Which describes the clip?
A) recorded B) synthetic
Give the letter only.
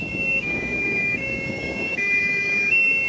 B